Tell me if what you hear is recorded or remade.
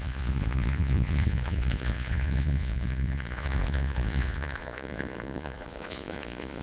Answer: remade